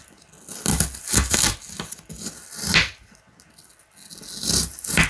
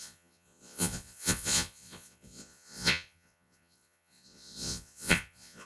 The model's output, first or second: second